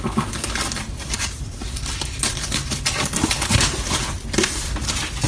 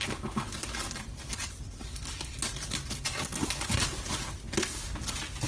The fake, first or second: first